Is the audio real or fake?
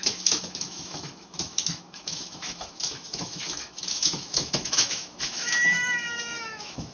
fake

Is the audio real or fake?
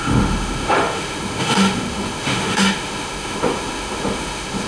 fake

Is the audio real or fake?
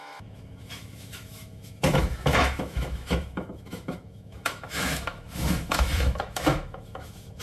fake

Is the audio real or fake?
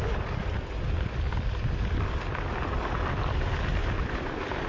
real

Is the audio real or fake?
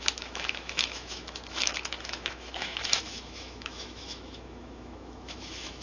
fake